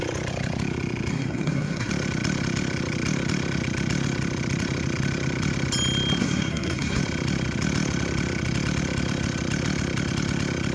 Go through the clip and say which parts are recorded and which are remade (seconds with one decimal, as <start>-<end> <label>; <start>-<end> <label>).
0.0-1.1 recorded; 1.1-1.9 remade; 1.9-6.2 recorded; 6.2-7.0 remade; 7.0-10.7 recorded